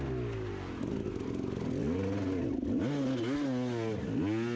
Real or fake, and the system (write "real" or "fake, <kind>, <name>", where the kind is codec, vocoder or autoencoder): real